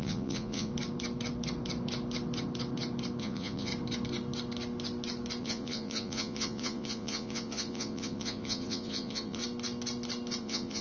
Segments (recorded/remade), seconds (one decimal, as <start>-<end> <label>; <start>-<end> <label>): 0.0-0.7 remade; 0.7-3.2 recorded; 3.2-3.7 remade; 3.7-5.4 recorded; 5.4-9.4 remade; 9.4-10.4 recorded; 10.4-10.8 remade